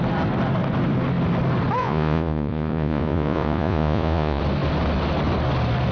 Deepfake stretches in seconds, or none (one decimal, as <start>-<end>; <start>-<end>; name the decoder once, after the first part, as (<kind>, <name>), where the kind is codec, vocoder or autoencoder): 1.8-4.4 (vocoder, Vocos)